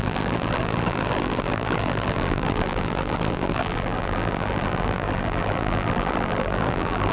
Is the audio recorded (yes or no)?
no